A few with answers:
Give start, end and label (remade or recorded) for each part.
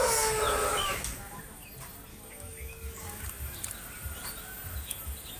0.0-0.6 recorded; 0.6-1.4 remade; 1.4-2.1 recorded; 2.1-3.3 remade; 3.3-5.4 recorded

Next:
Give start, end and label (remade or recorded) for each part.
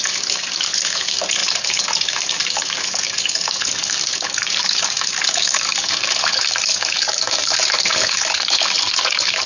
0.0-9.5 remade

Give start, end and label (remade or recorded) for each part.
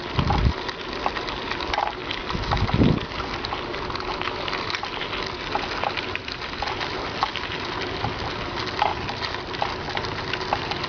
0.0-10.9 recorded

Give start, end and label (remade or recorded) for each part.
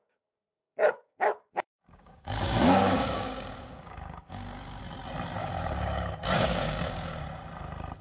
0.0-4.8 remade; 4.8-5.4 recorded; 5.4-7.2 remade; 7.2-8.0 recorded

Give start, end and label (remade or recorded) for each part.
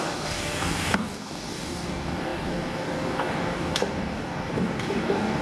0.0-5.4 remade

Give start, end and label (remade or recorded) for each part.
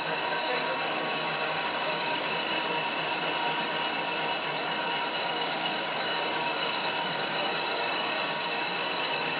0.0-2.5 remade; 2.5-5.2 recorded; 5.2-9.4 remade